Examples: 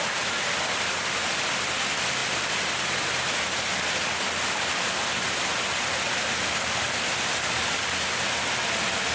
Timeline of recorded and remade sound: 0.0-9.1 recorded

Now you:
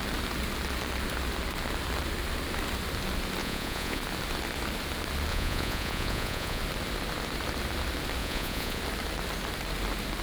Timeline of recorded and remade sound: 0.0-3.4 recorded; 3.4-4.0 remade; 4.0-5.3 recorded; 5.3-6.6 remade; 6.6-8.2 recorded; 8.2-8.8 remade; 8.8-10.2 recorded

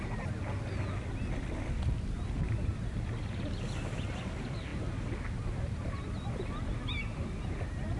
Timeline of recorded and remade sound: 0.0-8.0 recorded